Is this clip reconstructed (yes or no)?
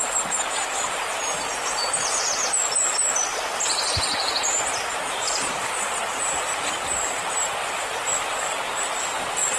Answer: no